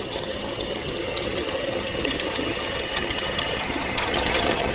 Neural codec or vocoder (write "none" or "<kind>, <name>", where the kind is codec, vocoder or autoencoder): vocoder, HiFi-GAN